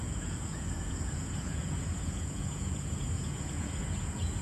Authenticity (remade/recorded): remade